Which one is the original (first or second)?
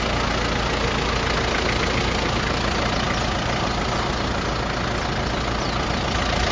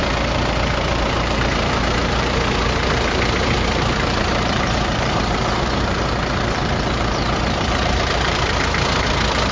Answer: first